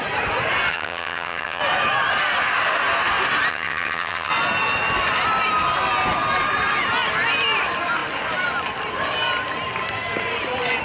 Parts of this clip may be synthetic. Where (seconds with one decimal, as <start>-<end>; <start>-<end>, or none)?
0.7-1.6; 3.5-4.3